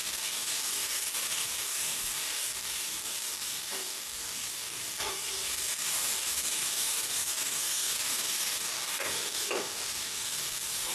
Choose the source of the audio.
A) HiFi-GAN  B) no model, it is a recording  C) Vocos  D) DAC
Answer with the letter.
D